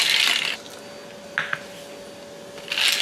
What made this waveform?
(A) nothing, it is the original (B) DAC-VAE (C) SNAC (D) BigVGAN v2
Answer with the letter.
A